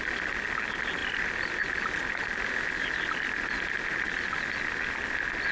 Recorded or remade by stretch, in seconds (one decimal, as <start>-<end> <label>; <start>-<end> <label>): 0.0-5.5 recorded